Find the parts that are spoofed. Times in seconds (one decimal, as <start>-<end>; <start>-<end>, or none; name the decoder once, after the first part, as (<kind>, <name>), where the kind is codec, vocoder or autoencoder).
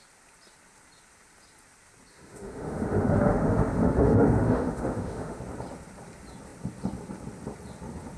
2.1-5.4 (autoencoder, DAC-VAE)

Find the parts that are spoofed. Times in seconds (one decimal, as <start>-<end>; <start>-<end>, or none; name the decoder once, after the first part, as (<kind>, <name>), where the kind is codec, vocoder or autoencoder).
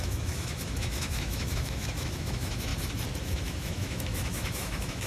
0.0-2.7 (autoencoder, DAC-VAE); 3.2-5.1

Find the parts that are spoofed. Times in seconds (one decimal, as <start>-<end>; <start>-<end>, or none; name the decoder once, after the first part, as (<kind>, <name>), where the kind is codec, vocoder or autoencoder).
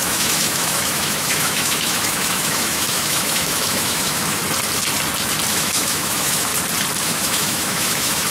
0.0-4.4 (autoencoder, DAC-VAE); 5.5-6.5; 7.0-8.3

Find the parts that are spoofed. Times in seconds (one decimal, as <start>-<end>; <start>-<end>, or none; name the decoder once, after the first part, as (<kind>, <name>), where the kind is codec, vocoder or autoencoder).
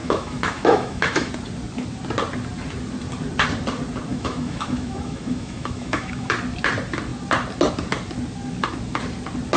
0.0-1.3 (autoencoder, DAC-VAE); 4.1-6.3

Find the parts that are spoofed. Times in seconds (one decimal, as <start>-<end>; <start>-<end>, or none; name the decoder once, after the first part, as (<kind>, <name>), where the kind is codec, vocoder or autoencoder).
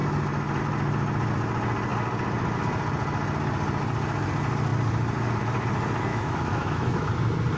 6.1-7.1 (autoencoder, DAC-VAE)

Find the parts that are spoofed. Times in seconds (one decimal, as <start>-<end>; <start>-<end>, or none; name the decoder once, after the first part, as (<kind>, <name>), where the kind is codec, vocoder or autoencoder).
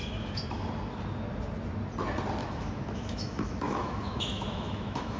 0.0-0.7 (autoencoder, DAC-VAE); 2.4-5.2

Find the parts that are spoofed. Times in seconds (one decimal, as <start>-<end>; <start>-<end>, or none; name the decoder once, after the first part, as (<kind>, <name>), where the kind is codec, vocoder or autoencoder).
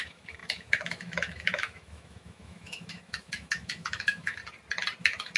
0.0-4.4 (autoencoder, DAC-VAE); 5.0-5.4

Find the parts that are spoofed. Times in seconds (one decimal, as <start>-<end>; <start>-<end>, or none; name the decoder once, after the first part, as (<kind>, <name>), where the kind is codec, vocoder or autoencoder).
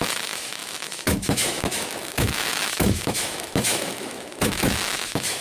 0.0-5.4 (autoencoder, DAC-VAE)